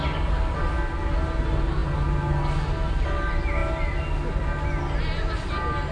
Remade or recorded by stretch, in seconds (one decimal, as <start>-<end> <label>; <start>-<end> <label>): 0.0-5.9 recorded